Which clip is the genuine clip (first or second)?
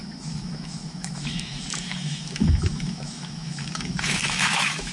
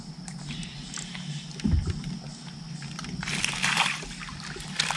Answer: second